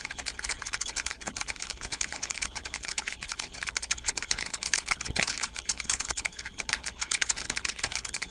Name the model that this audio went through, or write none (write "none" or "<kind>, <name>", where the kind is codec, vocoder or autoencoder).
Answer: codec, HILCodec